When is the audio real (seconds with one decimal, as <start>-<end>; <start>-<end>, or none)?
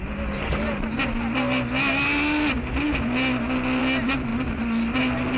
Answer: 0.0-5.4